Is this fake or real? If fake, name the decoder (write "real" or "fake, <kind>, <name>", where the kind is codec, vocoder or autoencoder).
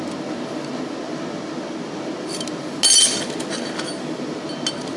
real